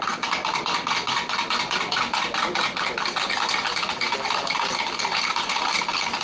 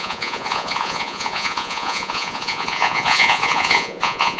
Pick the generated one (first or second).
second